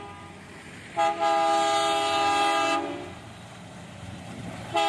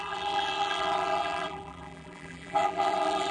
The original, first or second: first